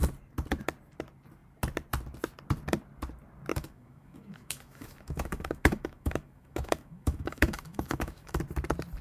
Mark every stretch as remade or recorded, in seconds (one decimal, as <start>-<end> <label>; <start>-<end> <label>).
0.0-3.5 recorded; 3.5-8.4 remade; 8.4-9.0 recorded